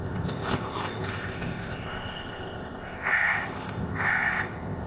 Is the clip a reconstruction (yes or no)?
yes